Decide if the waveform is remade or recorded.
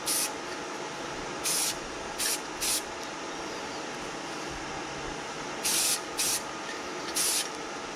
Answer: recorded